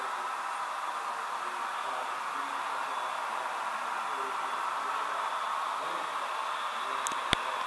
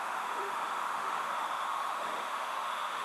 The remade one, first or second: second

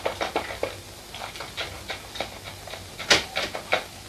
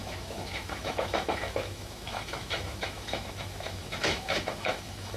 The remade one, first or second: second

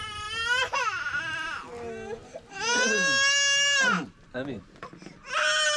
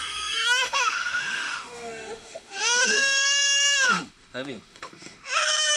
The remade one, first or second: second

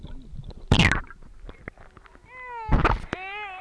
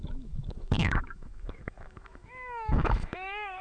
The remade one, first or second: second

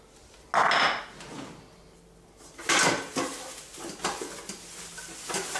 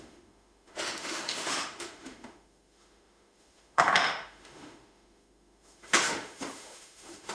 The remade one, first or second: second